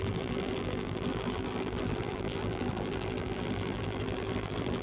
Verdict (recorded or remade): remade